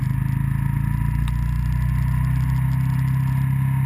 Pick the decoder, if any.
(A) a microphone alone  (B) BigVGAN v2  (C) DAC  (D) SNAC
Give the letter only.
A